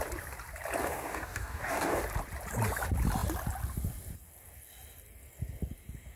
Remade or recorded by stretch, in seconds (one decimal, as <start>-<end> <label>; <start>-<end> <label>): 0.0-0.8 recorded; 0.8-2.0 remade; 2.0-6.2 recorded